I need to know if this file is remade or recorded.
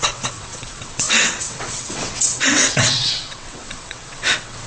remade